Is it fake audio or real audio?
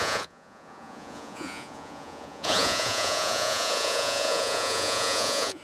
fake